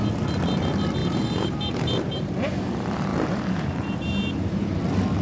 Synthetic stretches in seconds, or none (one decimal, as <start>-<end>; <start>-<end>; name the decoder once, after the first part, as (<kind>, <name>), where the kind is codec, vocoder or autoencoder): 1.0-2.6 (vocoder, BigVGAN v2); 3.1-4.8